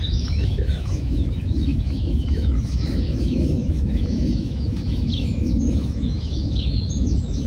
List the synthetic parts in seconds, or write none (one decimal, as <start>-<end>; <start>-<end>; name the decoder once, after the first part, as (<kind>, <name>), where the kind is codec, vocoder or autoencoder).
0.0-7.5 (autoencoder, DAC-VAE)